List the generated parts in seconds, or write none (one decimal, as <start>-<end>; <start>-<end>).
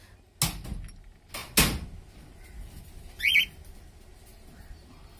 none